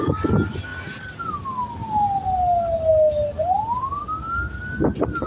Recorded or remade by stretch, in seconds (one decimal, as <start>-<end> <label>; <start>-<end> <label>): 0.0-5.3 recorded